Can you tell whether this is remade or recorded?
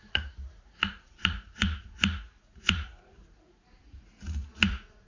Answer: remade